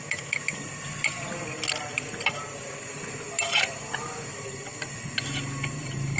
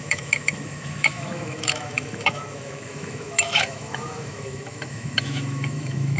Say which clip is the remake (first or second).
second